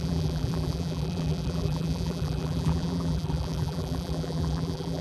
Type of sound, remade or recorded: remade